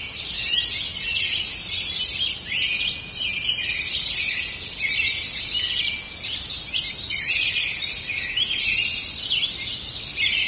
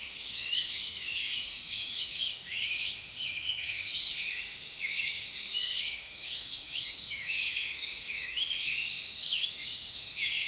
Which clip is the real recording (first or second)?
first